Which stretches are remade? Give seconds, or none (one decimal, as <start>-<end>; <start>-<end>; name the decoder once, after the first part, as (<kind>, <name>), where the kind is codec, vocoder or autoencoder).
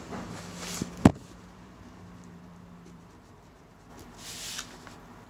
1.1-3.9 (vocoder, BigVGAN v2)